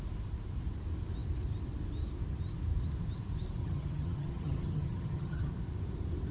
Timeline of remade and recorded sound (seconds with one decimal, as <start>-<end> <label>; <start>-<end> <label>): 0.0-3.6 recorded; 3.6-5.5 remade; 5.5-6.3 recorded